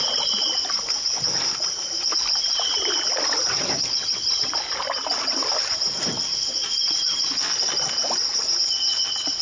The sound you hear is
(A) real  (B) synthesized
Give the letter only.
A